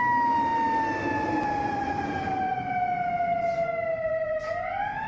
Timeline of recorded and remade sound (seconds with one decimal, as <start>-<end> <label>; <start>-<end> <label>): 0.0-3.9 recorded; 3.9-4.4 remade; 4.4-5.1 recorded